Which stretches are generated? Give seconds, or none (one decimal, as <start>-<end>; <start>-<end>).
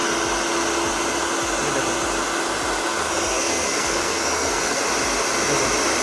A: 2.9-4.8